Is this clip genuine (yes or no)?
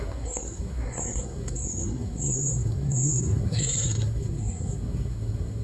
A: no